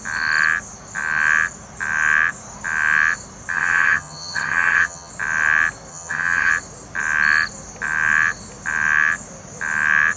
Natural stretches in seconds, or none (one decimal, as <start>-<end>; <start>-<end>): 0.0-3.5; 5.1-5.9; 6.5-10.2